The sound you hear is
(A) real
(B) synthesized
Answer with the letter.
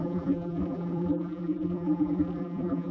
B